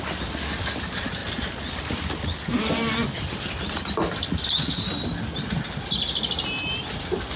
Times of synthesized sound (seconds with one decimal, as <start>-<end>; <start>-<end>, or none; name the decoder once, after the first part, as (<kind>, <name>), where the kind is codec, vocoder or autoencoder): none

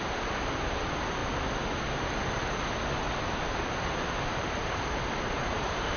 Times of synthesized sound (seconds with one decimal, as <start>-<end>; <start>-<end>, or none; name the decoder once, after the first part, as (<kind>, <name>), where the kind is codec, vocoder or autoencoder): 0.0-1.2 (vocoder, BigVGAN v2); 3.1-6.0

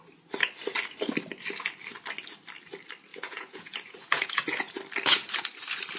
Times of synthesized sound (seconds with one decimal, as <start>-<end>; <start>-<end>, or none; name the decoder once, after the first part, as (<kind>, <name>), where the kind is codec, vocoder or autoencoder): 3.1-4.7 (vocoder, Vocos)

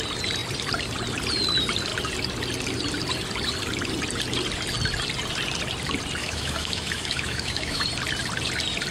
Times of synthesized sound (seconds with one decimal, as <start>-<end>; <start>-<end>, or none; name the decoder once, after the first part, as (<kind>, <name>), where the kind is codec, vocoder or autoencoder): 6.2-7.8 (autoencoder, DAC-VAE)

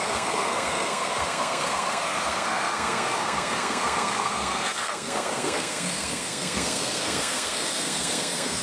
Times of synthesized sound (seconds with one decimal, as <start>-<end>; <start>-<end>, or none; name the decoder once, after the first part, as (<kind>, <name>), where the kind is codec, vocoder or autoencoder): 0.0-8.6 (codec, SNAC)